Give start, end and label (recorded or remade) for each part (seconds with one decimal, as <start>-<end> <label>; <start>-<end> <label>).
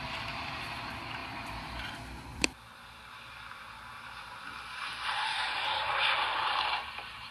0.0-1.2 recorded; 1.2-1.9 remade; 1.9-2.3 recorded; 2.3-4.3 remade; 4.3-5.9 recorded; 5.9-7.3 remade